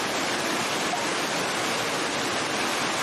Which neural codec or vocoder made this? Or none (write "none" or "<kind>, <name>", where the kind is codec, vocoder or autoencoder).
none